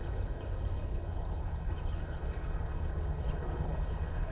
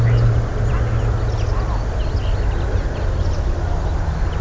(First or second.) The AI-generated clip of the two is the first